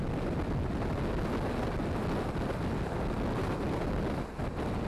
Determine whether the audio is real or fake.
real